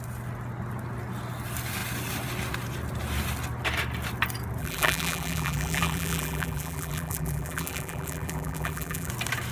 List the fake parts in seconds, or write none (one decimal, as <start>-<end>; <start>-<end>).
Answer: 4.6-9.1